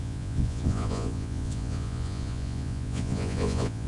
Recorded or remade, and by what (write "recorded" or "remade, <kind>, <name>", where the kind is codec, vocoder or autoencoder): remade, vocoder, Vocos